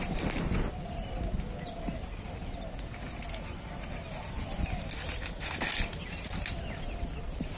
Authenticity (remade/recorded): recorded